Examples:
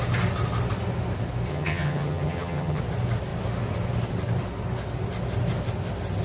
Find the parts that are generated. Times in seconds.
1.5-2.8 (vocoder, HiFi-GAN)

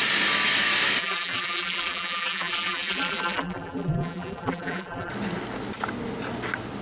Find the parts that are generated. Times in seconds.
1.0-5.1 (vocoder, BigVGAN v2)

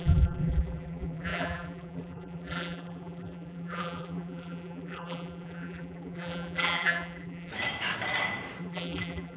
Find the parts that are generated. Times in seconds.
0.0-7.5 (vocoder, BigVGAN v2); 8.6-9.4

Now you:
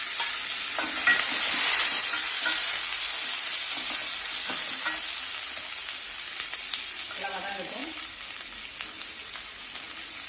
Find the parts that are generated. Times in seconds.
1.1-4.2 (vocoder, BigVGAN v2); 7.8-8.7

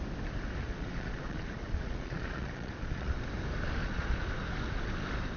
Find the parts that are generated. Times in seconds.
0.6-3.2 (vocoder, Vocos); 3.8-4.3

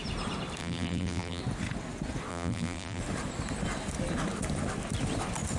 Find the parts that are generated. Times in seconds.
0.6-1.4 (vocoder, BigVGAN v2); 2.3-3.0

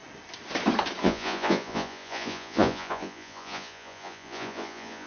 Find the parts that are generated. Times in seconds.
1.0-5.1 (vocoder, Vocos)

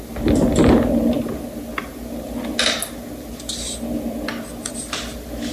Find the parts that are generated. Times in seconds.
none